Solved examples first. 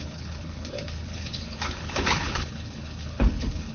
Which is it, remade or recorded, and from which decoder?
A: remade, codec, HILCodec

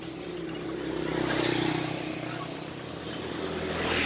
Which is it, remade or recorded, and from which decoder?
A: recorded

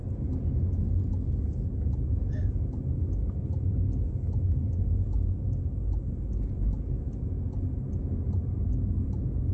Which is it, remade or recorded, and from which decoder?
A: recorded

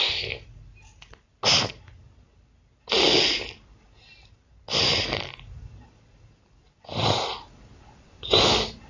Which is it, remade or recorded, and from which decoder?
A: recorded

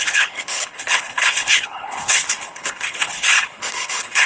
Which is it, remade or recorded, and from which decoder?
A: remade, codec, HILCodec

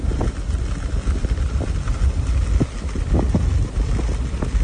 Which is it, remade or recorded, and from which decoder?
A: recorded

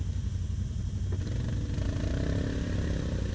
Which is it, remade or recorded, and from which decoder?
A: recorded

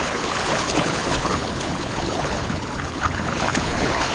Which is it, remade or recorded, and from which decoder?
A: remade, codec, HILCodec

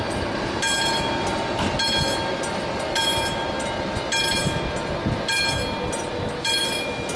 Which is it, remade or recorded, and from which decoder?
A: recorded